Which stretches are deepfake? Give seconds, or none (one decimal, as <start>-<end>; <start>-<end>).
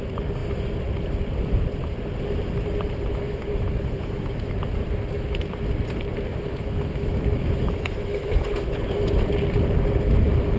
3.1-4.6; 6.3-9.1